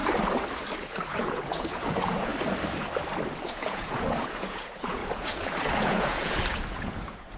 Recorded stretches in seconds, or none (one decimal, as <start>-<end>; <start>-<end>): 0.0-0.8; 2.3-3.4